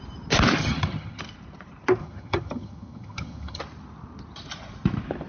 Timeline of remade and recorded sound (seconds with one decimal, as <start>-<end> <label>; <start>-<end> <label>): 0.0-0.6 recorded; 0.6-1.2 remade; 1.2-2.0 recorded; 2.0-3.6 remade; 3.6-5.3 recorded